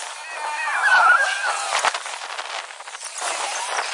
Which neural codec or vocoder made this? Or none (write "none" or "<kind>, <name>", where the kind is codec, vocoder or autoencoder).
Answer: none